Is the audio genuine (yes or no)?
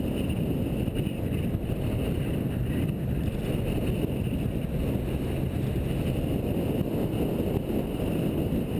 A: yes